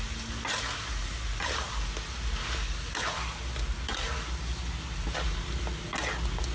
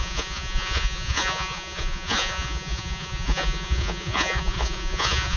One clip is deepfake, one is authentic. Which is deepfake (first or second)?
second